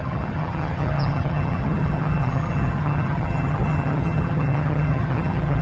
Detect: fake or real fake